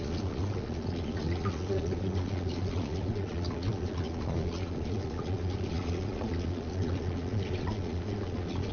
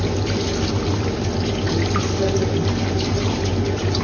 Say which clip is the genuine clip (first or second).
second